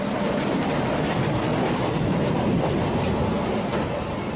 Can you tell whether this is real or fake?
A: real